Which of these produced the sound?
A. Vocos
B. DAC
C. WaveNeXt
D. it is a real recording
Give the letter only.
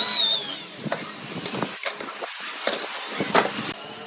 D